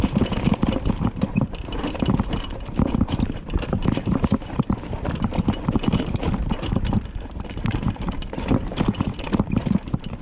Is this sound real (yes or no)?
no